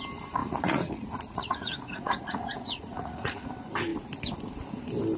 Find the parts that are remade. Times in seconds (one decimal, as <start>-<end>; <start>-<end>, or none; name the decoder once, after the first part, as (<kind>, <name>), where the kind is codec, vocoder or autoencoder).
0.4-3.5 (vocoder, Vocos)